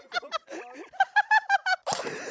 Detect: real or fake real